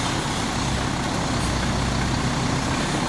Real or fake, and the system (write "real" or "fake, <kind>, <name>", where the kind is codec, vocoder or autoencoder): real